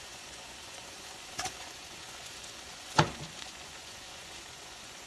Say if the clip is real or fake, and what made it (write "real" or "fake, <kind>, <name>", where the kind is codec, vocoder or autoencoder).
fake, vocoder, Vocos